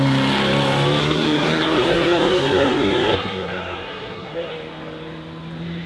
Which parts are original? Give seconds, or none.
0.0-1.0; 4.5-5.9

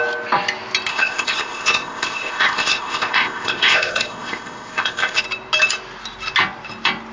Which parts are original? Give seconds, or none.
0.0-0.9; 5.2-7.1

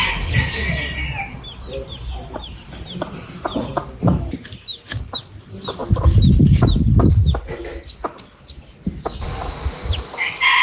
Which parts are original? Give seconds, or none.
0.0-10.6

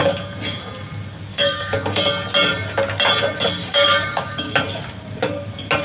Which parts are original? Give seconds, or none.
0.0-1.3; 2.0-3.6; 4.5-5.8